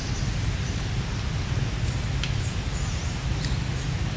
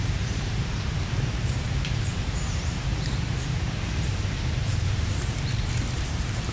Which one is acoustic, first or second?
first